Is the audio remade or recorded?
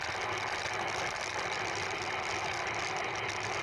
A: recorded